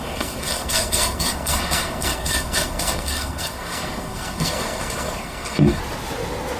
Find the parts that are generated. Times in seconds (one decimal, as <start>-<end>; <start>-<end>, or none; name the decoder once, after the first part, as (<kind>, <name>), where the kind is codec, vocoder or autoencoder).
0.0-5.8 (codec, SNAC)